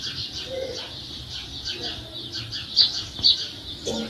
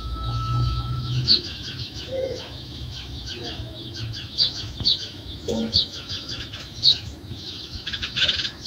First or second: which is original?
first